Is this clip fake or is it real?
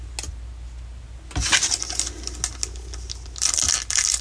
real